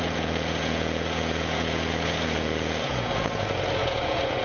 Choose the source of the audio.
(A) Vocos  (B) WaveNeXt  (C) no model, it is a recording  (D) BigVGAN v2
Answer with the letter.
A